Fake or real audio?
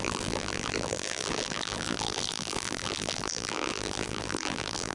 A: fake